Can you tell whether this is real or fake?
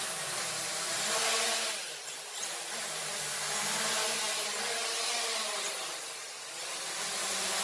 real